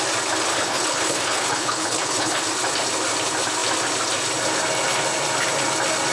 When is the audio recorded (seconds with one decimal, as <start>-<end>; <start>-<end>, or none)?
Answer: 0.0-0.5; 2.4-6.1